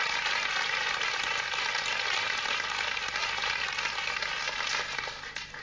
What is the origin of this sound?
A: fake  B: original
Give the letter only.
B